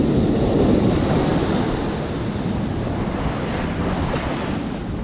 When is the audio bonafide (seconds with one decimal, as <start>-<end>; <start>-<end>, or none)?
0.0-5.0